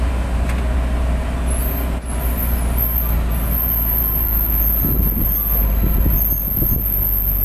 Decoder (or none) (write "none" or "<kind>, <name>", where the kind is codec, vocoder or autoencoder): none